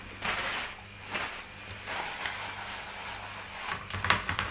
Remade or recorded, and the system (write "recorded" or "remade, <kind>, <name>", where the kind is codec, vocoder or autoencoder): recorded